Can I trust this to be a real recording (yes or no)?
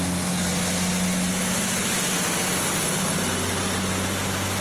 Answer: yes